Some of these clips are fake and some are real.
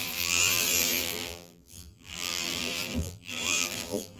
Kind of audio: fake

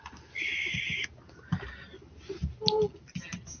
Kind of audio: real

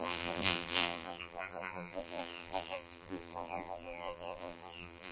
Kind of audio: fake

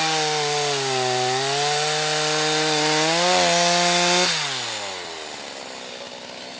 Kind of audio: real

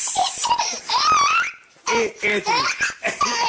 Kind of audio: real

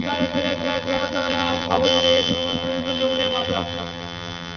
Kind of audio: fake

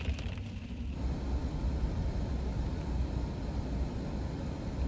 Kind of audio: real